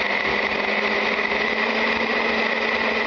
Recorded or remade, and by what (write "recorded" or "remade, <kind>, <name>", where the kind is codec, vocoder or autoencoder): recorded